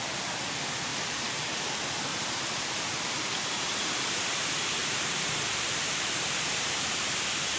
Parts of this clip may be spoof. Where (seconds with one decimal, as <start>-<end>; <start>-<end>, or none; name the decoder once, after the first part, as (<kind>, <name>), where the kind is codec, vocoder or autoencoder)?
0.9-1.7 (vocoder, BigVGAN v2); 2.1-4.1; 4.8-7.6